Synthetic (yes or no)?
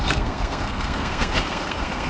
yes